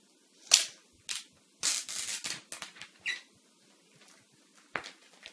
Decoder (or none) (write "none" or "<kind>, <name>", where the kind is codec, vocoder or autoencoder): none